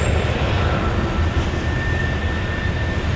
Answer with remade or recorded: recorded